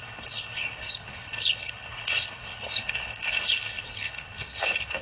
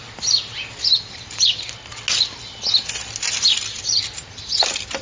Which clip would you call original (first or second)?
second